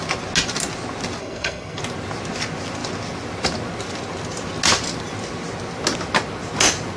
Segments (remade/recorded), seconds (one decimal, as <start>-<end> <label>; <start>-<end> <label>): 0.0-1.2 recorded; 1.2-1.8 remade; 1.8-7.0 recorded